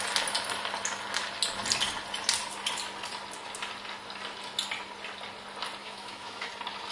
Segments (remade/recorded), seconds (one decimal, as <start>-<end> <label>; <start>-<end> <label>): 0.0-5.8 recorded; 5.8-6.5 remade; 6.5-6.9 recorded